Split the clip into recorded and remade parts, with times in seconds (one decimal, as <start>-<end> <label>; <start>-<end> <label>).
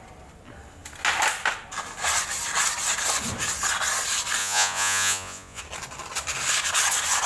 0.0-4.4 recorded; 4.4-5.6 remade; 5.6-7.3 recorded